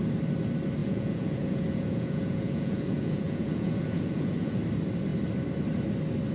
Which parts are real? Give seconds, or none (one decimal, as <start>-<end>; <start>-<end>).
0.0-0.8; 4.6-6.3